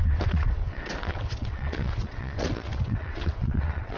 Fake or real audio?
fake